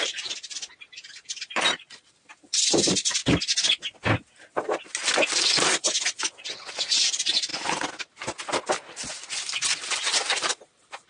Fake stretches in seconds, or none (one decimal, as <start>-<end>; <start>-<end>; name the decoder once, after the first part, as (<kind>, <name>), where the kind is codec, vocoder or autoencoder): 0.0-3.2 (vocoder, BigVGAN v2); 6.5-7.5; 10.4-11.1